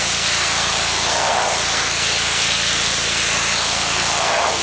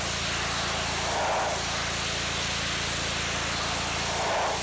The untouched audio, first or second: second